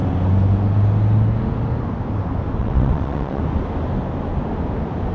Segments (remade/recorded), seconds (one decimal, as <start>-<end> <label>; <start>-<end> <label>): 0.0-2.6 recorded; 2.6-3.4 remade; 3.4-5.1 recorded